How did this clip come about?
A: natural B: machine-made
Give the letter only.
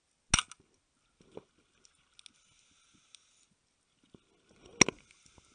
A